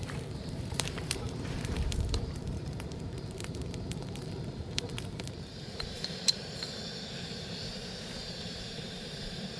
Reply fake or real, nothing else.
fake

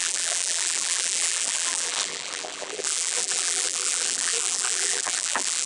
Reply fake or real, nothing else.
fake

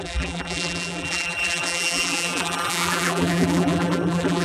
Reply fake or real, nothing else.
fake